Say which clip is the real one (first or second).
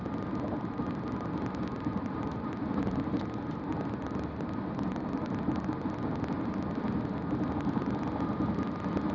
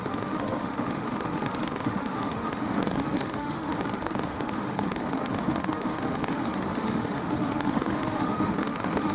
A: first